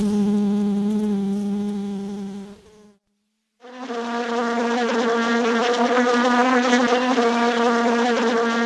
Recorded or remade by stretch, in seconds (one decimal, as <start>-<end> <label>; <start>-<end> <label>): 0.0-5.3 recorded; 5.3-5.9 remade; 5.9-8.7 recorded